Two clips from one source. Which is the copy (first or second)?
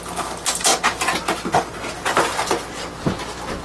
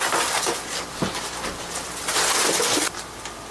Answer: second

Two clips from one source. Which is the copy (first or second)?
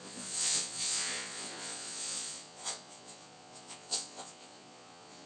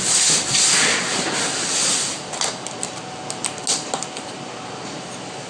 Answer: first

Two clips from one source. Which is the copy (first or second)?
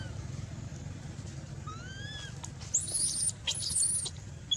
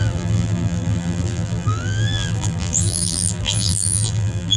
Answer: second